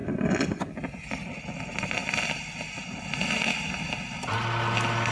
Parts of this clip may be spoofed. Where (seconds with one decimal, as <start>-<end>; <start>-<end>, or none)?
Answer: none